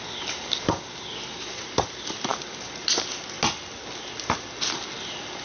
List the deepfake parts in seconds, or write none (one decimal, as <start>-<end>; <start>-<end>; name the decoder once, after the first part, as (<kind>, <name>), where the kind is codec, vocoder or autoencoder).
none